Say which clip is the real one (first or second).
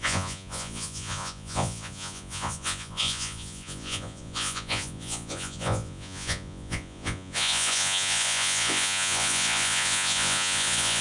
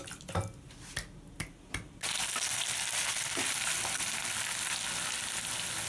second